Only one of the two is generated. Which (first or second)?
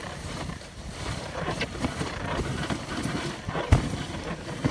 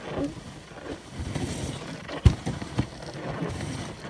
first